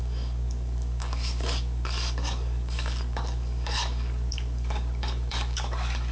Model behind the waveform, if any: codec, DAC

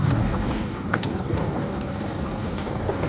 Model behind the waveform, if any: codec, DAC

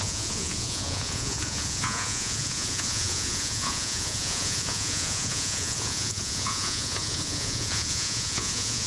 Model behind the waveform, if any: vocoder, Vocos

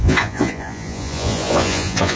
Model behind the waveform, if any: vocoder, Vocos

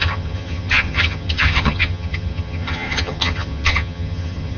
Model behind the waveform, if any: vocoder, HiFi-GAN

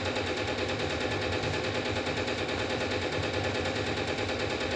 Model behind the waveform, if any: none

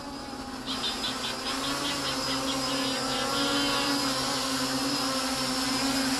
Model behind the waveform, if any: none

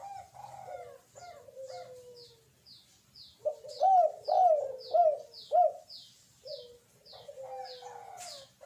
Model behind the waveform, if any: none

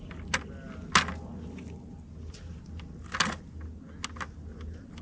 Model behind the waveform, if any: none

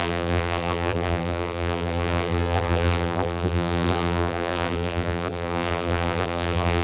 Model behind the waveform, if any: vocoder, BigVGAN v2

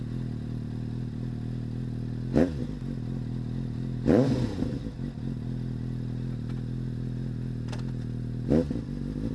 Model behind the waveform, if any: none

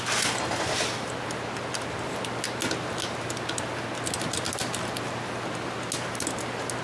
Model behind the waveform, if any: none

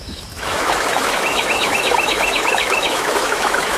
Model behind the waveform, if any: autoencoder, DAC-VAE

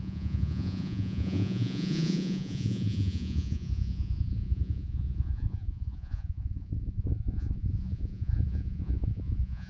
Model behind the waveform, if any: vocoder, Vocos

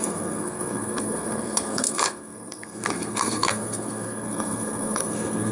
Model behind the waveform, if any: codec, SNAC